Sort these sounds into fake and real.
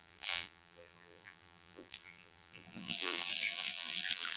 fake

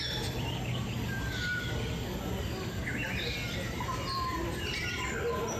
real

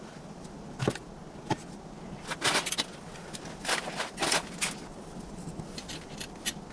real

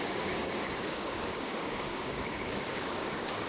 fake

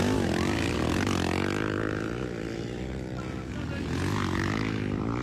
real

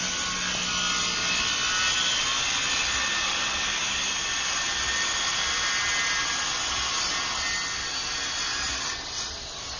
real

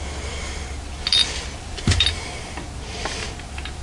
real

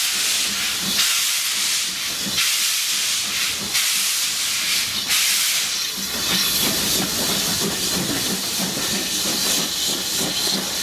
real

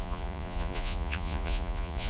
fake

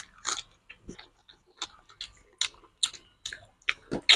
real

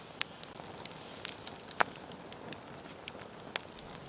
real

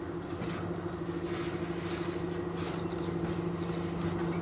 real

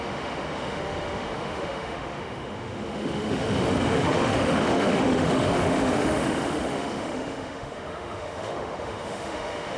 fake